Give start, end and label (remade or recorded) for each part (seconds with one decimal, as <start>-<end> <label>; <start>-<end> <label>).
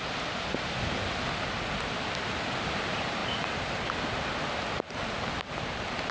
0.0-6.1 recorded